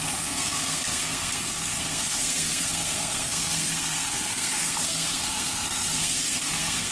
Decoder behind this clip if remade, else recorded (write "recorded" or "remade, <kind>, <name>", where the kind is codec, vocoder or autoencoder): remade, codec, SNAC